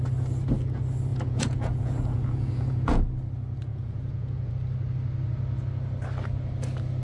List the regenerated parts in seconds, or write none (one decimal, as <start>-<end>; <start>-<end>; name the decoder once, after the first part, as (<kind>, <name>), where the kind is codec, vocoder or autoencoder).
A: 1.1-3.0 (vocoder, Vocos); 3.7-4.5